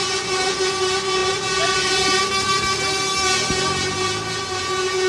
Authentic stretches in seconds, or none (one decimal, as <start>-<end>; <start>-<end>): 0.6-5.1